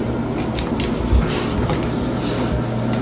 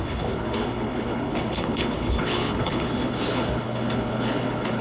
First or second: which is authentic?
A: first